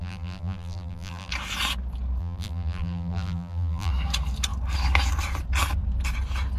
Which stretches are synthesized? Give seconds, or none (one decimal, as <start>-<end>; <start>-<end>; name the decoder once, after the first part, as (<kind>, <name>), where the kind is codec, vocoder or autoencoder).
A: 0.0-1.3 (vocoder, BigVGAN v2); 2.2-3.9